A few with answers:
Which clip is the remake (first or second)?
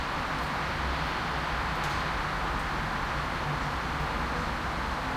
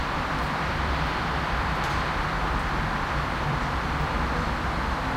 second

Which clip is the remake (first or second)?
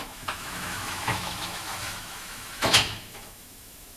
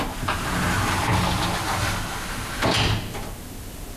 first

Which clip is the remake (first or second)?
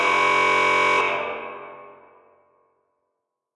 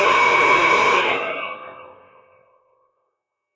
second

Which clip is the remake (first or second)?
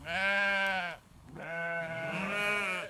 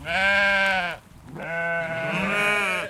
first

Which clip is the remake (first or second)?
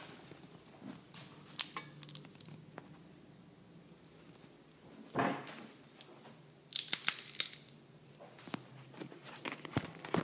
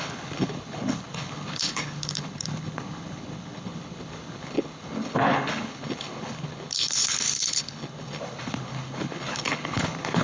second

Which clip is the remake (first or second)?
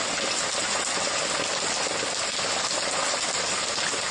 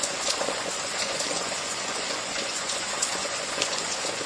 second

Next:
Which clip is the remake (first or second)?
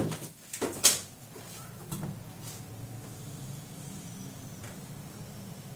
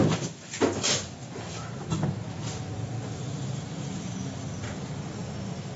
second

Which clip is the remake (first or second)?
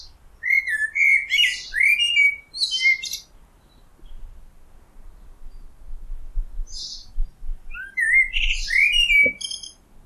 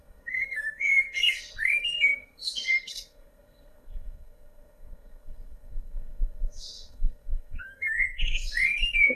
second